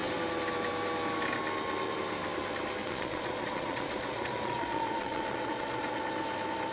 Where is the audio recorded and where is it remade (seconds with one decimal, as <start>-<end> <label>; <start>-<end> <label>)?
0.0-2.8 recorded; 2.8-6.0 remade; 6.0-6.7 recorded

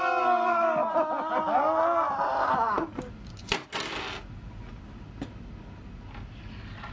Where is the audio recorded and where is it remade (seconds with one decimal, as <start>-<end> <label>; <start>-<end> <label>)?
0.0-6.9 recorded

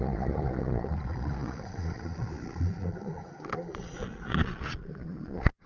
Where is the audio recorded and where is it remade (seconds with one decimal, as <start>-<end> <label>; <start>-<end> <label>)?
0.0-5.7 remade

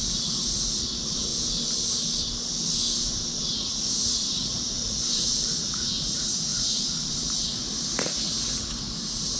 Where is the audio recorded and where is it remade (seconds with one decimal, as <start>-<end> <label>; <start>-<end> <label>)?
0.0-1.3 remade; 1.3-3.4 recorded; 3.4-9.4 remade

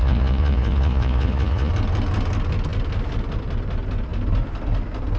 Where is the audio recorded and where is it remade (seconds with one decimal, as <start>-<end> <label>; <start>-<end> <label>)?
0.0-1.7 remade; 1.7-5.2 recorded

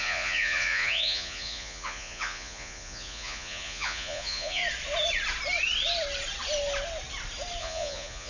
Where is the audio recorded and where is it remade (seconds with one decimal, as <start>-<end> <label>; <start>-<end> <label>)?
0.0-4.6 remade; 4.6-7.6 recorded; 7.6-8.3 remade

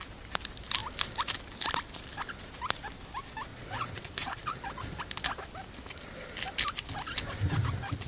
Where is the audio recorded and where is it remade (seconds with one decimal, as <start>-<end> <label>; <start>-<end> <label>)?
0.0-3.5 recorded; 3.5-5.0 remade; 5.0-8.1 recorded

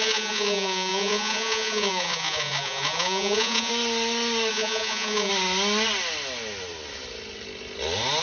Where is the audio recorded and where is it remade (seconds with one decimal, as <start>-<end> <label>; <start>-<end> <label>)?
0.0-3.7 remade; 3.7-4.5 recorded; 4.5-5.3 remade; 5.3-8.2 recorded